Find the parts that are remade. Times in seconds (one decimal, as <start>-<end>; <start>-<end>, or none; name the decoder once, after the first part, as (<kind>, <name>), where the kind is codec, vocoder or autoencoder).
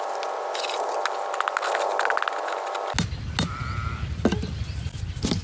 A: none